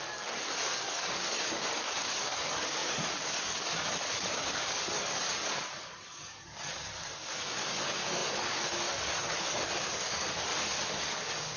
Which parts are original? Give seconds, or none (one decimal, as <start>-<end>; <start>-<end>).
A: 10.5-11.0